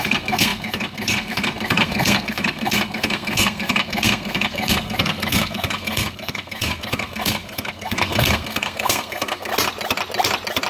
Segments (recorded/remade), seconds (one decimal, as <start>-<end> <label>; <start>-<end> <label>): 0.0-9.5 remade; 9.5-10.7 recorded